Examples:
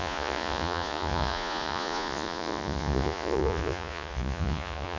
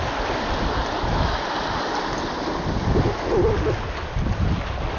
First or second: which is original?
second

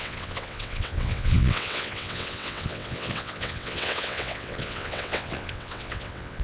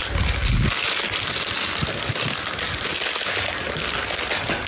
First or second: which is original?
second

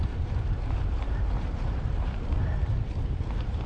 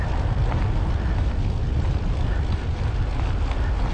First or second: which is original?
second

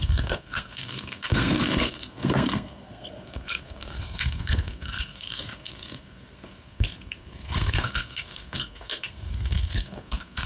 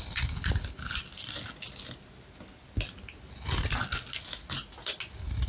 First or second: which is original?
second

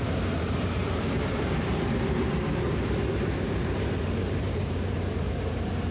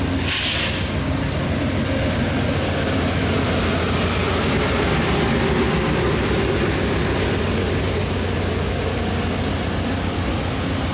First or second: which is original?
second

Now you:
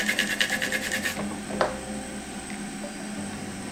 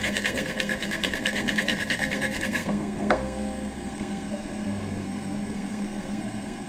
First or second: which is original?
first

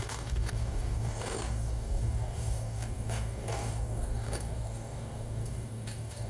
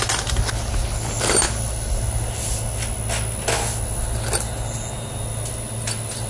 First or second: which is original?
second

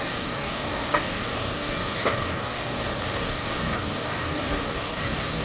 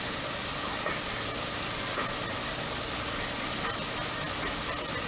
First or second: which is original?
second